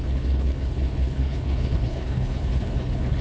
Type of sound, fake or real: fake